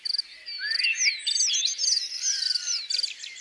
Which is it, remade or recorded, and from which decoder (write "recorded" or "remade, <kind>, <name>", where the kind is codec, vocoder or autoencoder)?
recorded